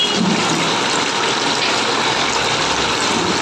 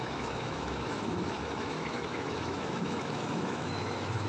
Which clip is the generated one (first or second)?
second